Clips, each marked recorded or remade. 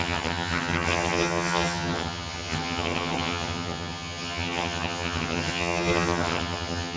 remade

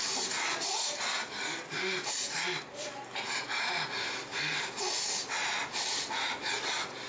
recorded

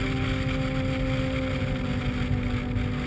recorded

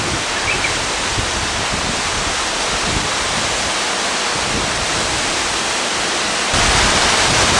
recorded